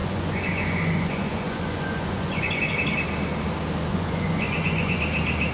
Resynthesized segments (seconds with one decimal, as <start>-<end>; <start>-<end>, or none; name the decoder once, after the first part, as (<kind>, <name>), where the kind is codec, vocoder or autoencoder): 0.0-2.7 (vocoder, Vocos); 3.9-5.0